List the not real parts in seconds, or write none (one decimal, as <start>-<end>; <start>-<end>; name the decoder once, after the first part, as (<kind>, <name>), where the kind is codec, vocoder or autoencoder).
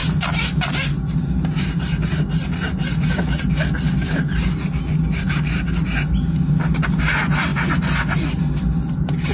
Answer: none